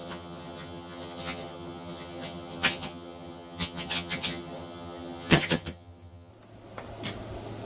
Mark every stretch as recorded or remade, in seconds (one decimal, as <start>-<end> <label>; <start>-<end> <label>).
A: 0.0-6.3 remade; 6.3-7.7 recorded